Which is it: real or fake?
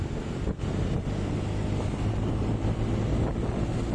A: real